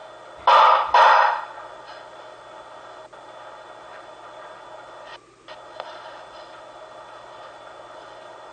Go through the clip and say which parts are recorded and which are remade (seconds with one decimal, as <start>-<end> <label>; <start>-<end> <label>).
0.0-8.5 recorded